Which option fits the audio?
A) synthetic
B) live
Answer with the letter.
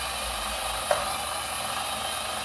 B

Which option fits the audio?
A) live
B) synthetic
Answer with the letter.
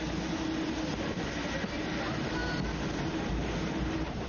A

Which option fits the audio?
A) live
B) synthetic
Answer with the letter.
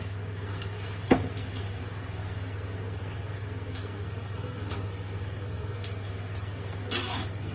B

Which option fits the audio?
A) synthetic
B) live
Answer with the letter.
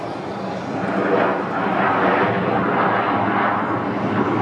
B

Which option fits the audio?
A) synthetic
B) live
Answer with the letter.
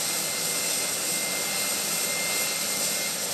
B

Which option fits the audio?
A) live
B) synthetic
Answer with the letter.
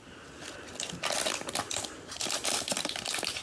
A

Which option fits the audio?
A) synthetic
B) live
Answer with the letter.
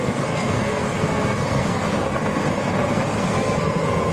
A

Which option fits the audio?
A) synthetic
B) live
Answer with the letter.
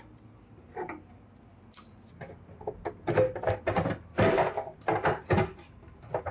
B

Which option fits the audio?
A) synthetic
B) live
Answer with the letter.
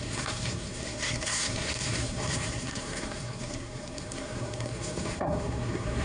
A